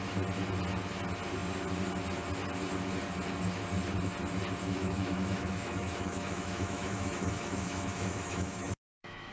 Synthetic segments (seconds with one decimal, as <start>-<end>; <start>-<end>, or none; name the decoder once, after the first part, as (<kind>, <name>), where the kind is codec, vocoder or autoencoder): 4.6-9.3 (autoencoder, DAC-VAE)